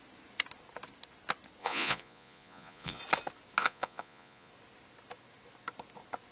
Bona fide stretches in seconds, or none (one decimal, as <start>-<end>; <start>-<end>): 0.0-1.6; 3.0-3.6; 4.5-6.3